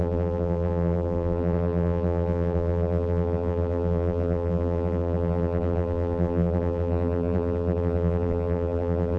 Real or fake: fake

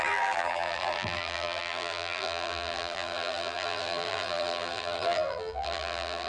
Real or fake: fake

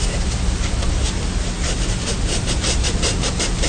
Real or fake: real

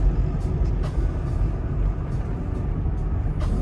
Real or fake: real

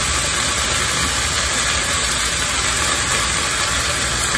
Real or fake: real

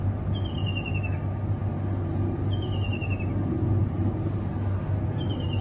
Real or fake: real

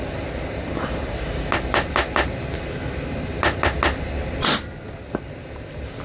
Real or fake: real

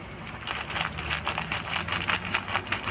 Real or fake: real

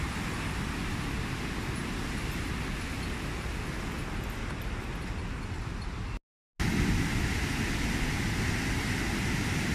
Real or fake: real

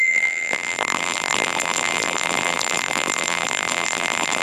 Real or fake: fake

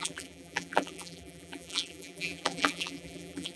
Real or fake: fake